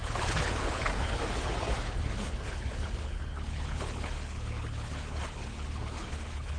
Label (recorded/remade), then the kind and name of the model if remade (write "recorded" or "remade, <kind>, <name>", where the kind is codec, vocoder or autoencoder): remade, codec, HILCodec